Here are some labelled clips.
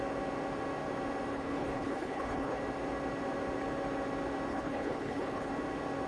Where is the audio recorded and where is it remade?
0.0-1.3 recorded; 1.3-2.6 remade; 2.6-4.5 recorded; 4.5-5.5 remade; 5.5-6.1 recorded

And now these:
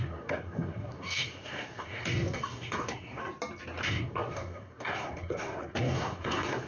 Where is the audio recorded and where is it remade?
0.0-3.2 remade; 3.2-3.8 recorded; 3.8-6.7 remade

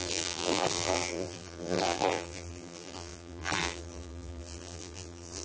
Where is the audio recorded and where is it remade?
0.0-5.4 remade

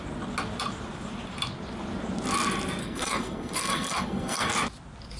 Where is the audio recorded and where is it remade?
0.0-2.8 recorded; 2.8-4.5 remade; 4.5-5.2 recorded

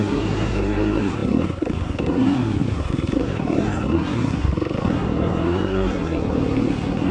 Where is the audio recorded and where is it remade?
0.0-7.1 remade